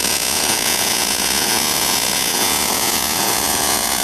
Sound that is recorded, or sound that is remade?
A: remade